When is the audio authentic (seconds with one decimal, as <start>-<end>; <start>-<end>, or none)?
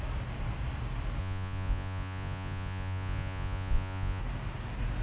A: 0.0-1.2; 4.2-5.0